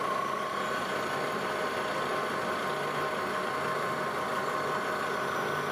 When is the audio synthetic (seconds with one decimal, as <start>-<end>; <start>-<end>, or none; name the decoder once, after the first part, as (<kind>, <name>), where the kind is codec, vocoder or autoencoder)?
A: none